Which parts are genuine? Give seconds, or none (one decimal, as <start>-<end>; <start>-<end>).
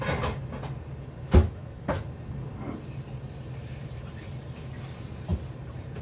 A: 0.0-1.4; 2.0-6.0